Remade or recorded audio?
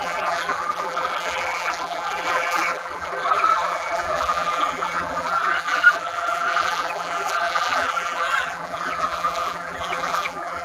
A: remade